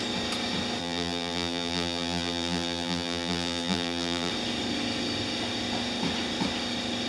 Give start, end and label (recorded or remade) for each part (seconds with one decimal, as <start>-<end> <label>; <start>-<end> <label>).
0.0-0.8 recorded; 0.8-4.3 remade; 4.3-7.1 recorded